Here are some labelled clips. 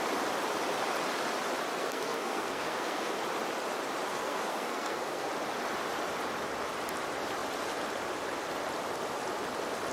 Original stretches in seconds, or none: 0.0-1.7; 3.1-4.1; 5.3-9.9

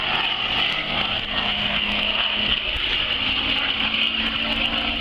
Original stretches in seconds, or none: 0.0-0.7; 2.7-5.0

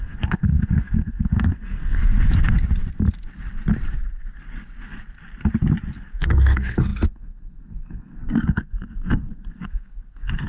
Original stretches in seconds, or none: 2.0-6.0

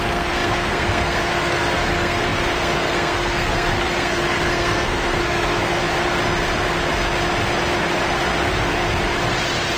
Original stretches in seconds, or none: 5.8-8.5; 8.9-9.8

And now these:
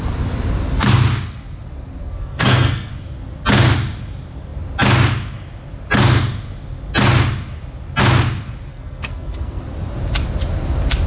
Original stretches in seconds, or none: 0.0-2.0; 2.9-8.7; 9.6-11.1